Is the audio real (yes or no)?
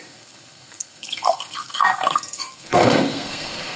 no